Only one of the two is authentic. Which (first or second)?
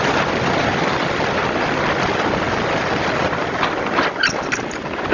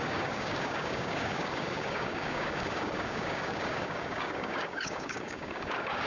first